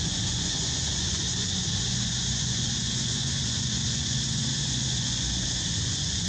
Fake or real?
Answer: fake